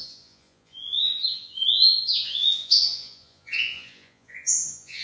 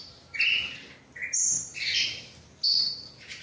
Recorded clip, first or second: second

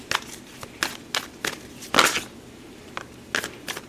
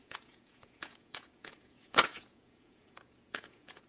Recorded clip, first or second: first